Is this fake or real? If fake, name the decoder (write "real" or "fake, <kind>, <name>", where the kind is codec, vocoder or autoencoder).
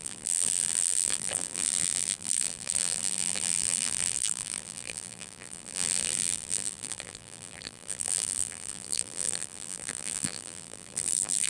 fake, vocoder, BigVGAN v2